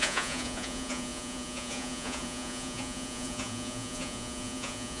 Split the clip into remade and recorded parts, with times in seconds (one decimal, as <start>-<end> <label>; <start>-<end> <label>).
0.0-5.0 remade